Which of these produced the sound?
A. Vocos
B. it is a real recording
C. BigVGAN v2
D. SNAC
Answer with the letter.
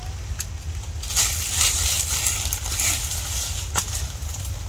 B